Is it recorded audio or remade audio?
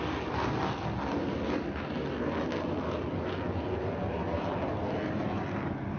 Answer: recorded